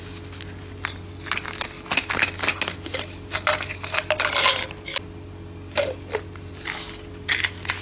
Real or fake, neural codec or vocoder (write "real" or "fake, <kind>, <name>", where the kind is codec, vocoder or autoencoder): real